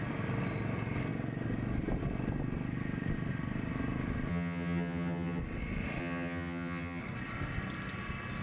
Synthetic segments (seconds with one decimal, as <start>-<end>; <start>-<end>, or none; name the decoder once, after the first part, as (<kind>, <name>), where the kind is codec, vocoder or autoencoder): 4.3-5.4 (vocoder, HiFi-GAN); 6.0-7.0